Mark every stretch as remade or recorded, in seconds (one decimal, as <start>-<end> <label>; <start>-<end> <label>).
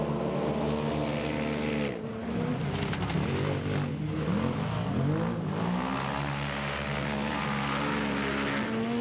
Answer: 0.0-9.0 recorded